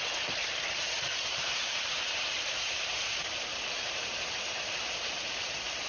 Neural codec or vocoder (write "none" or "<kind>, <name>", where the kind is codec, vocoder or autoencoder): vocoder, BigVGAN v2